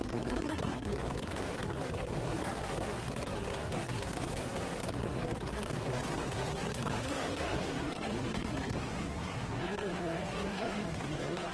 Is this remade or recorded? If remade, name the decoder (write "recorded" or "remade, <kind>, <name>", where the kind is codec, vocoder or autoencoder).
remade, codec, SNAC